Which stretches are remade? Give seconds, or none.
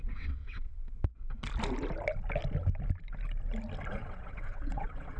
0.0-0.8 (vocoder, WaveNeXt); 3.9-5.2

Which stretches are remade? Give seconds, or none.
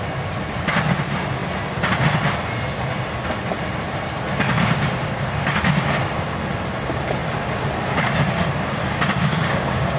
9.2-10.0 (codec, DAC)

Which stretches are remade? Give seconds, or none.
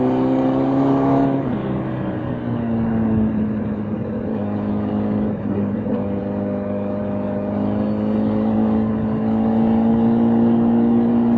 0.0-11.4 (codec, DAC)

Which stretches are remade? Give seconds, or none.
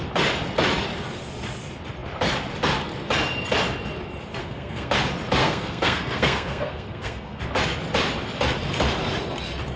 4.4-4.9 (codec, SNAC); 5.4-7.4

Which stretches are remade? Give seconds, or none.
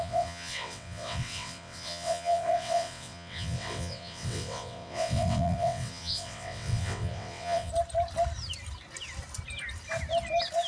0.0-7.7 (vocoder, WaveNeXt)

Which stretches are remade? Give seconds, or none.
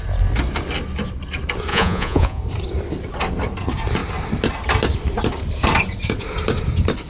1.7-2.4 (vocoder, Vocos)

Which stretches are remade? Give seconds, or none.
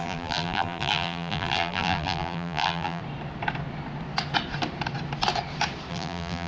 0.0-3.0 (vocoder, BigVGAN v2); 5.9-6.5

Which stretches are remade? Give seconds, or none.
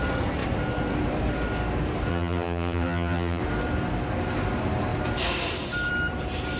2.1-3.4 (vocoder, BigVGAN v2)